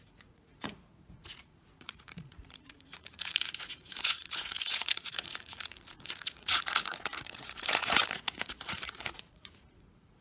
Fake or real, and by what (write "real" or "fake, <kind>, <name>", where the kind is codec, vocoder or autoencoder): fake, vocoder, Vocos